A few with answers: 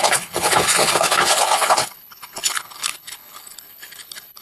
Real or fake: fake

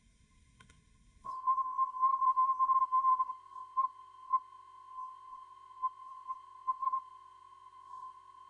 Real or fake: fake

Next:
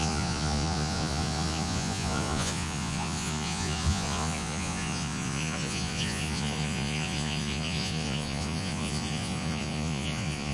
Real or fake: fake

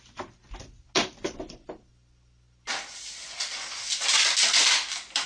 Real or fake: real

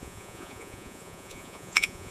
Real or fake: fake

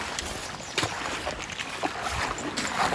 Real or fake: real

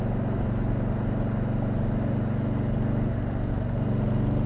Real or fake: real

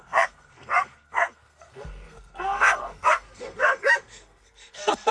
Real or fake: fake